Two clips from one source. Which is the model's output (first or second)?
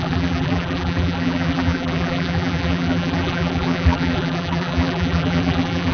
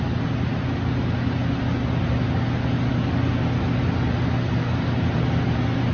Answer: first